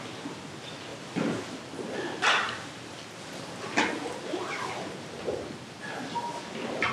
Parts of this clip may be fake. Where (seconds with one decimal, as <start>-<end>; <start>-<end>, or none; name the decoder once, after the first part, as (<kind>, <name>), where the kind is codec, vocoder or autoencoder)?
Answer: none